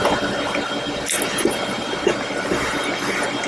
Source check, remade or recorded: recorded